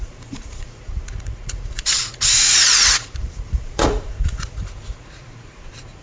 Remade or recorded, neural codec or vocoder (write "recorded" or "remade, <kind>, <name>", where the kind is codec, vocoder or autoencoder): remade, vocoder, Vocos